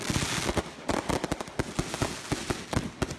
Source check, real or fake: real